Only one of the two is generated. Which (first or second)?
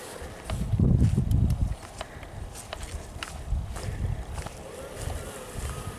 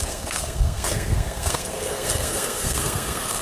second